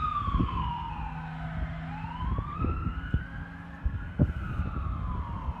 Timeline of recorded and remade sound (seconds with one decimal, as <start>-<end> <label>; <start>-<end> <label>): 0.0-0.4 recorded; 0.4-0.9 remade; 0.9-2.5 recorded; 2.5-3.2 remade; 3.2-3.8 recorded; 3.8-4.5 remade; 4.5-5.6 recorded

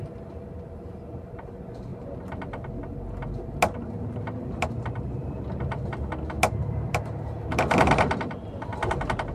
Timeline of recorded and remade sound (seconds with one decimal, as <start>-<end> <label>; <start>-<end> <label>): 0.0-9.3 recorded

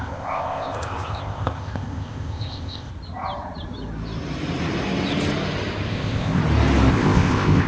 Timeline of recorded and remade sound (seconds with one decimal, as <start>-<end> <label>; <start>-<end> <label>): 0.0-2.9 remade; 2.9-5.9 recorded; 5.9-6.4 remade; 6.4-6.9 recorded; 6.9-7.7 remade

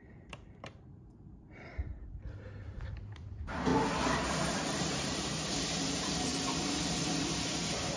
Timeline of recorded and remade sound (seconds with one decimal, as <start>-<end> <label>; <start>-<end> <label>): 0.0-1.9 remade; 1.9-2.6 recorded; 2.6-3.7 remade; 3.7-4.2 recorded; 4.2-8.0 remade